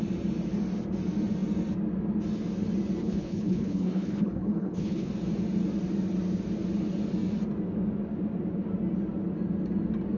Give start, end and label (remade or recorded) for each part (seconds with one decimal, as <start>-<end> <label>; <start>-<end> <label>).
0.0-3.0 recorded; 3.0-5.1 remade; 5.1-10.2 recorded